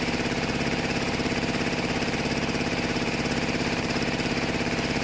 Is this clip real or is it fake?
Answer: fake